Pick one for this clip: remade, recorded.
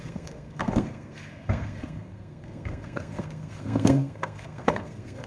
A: remade